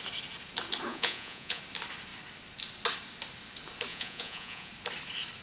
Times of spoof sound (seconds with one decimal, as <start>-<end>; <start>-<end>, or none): 0.9-1.6; 3.9-4.7